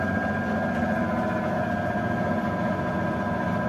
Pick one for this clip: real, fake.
real